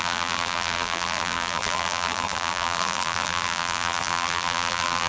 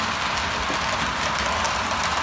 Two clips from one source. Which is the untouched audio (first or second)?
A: second